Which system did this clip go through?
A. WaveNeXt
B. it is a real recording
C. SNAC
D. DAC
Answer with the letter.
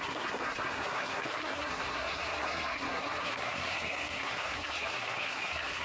C